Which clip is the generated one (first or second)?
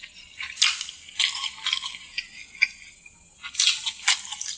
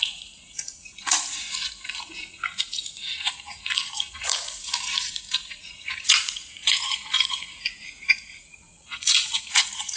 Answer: second